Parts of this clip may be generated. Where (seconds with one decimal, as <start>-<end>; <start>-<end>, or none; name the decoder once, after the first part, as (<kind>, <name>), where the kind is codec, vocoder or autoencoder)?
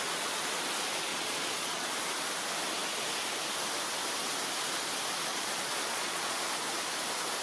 1.1-1.9 (vocoder, Vocos); 5.3-6.5